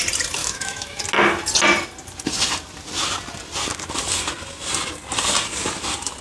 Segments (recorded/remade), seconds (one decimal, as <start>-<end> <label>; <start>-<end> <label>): 0.0-0.4 recorded; 0.4-1.0 remade; 1.0-6.2 recorded